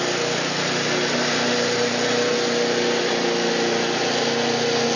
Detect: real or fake real